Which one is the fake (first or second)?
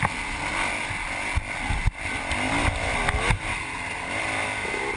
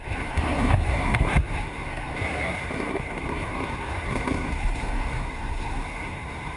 second